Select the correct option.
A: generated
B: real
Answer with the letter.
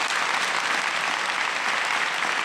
B